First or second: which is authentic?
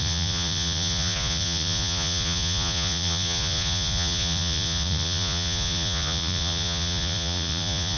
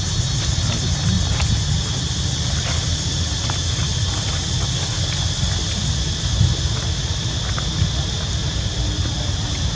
second